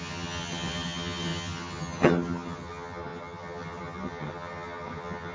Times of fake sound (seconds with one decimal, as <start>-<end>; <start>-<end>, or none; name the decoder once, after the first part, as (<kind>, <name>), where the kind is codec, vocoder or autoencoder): 0.0-5.3 (vocoder, HiFi-GAN)